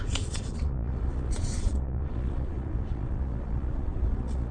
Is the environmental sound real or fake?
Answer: fake